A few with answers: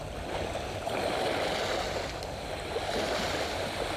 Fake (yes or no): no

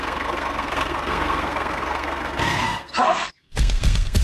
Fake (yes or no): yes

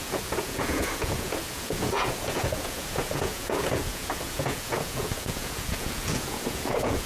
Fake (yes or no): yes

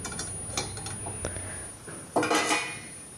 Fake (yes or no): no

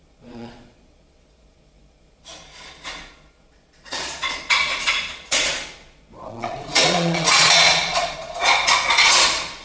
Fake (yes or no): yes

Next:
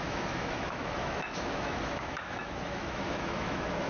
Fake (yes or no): yes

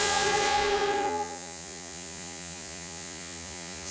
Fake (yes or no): yes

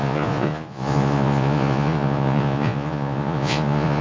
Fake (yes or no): yes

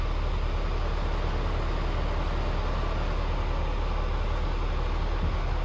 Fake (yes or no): no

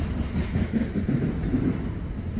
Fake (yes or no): no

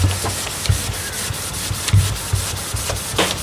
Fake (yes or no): no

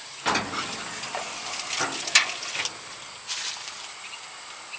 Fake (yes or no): no